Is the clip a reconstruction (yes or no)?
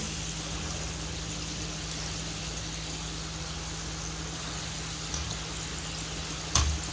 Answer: no